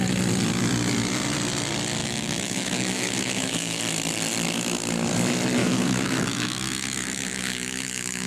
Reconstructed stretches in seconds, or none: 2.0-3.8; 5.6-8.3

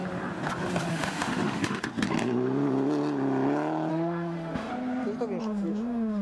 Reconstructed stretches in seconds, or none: 0.9-1.9; 3.9-4.7; 5.4-6.2

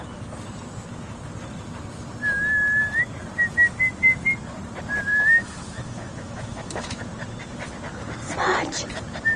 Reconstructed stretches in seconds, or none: 5.1-7.0

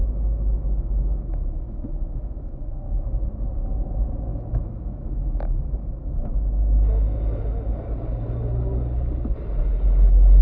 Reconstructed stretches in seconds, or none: 0.0-3.3; 4.3-6.2

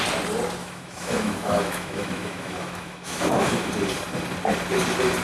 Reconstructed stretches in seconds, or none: 0.6-3.7